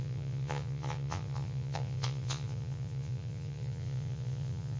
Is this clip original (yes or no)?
no